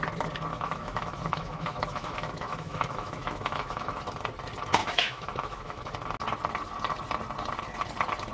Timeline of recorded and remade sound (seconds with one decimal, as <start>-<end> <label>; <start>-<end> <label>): 0.0-0.5 recorded; 0.5-3.9 remade; 3.9-4.8 recorded; 4.8-5.9 remade; 5.9-8.3 recorded

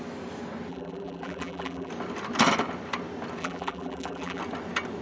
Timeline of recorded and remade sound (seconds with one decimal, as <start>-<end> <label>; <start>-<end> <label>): 0.0-0.7 recorded; 0.7-1.9 remade; 1.9-3.4 recorded; 3.4-4.4 remade; 4.4-5.0 recorded

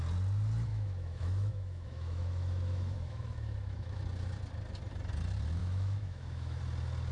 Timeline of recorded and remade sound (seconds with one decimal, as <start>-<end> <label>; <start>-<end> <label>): 0.0-0.7 recorded; 0.7-4.0 remade; 4.0-5.6 recorded; 5.6-6.6 remade; 6.6-7.1 recorded

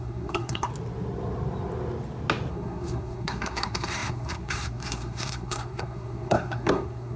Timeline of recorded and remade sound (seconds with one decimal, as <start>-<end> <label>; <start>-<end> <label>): 0.0-0.7 remade; 0.7-2.5 recorded; 2.5-7.2 remade

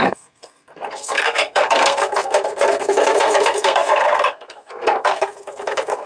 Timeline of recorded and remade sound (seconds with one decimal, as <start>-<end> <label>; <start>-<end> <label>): 0.0-6.1 remade